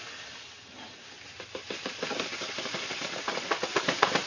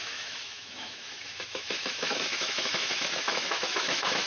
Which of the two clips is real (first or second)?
first